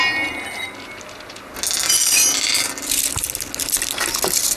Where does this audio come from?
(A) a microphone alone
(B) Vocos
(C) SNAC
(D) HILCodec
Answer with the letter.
A